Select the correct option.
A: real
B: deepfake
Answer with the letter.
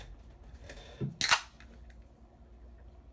A